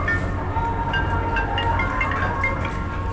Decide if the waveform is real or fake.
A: real